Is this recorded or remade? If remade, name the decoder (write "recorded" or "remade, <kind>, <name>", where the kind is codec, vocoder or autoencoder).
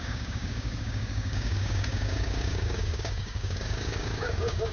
remade, codec, DAC